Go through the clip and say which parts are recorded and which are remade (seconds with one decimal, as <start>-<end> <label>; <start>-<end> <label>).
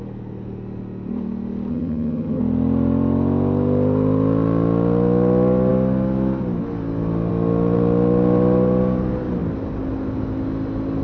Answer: 0.0-1.7 recorded; 1.7-2.4 remade; 2.4-11.0 recorded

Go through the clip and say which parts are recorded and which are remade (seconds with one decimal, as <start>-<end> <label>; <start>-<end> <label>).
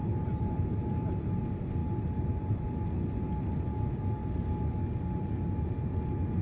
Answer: 0.0-1.4 remade; 1.4-6.4 recorded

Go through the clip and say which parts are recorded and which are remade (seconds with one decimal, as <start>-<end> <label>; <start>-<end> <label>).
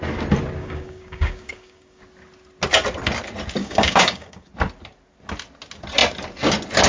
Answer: 0.0-0.6 recorded; 0.6-2.0 remade; 2.0-3.6 recorded; 3.6-4.5 remade; 4.5-6.9 recorded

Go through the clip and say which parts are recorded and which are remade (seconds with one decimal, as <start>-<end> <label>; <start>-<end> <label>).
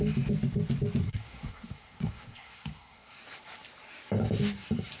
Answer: 0.0-1.0 recorded; 1.0-3.2 remade; 3.2-5.0 recorded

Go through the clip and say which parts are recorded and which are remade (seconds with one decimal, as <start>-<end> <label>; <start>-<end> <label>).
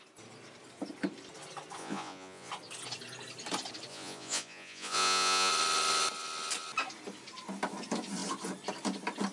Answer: 0.0-1.8 recorded; 1.8-2.5 remade; 2.5-3.9 recorded; 3.9-5.5 remade; 5.5-9.3 recorded